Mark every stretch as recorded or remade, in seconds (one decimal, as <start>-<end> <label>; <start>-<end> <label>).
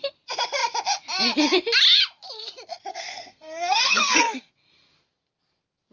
0.0-2.9 recorded; 2.9-4.5 remade; 4.5-5.9 recorded